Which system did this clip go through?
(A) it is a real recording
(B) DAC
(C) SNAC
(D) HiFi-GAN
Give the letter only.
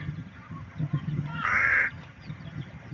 D